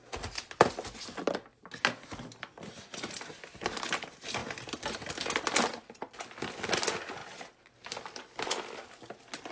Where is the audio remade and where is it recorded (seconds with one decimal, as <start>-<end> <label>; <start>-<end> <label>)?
0.0-9.5 recorded